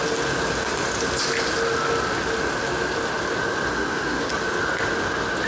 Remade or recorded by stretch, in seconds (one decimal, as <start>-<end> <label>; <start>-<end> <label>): 0.0-3.7 recorded; 3.7-4.3 remade; 4.3-5.5 recorded